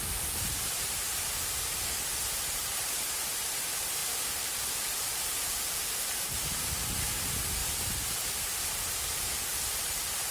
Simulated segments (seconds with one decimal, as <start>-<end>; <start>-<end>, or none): 0.0-7.6; 9.2-10.3